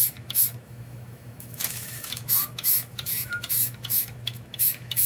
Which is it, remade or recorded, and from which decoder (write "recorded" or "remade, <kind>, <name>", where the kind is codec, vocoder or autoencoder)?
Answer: remade, autoencoder, DAC-VAE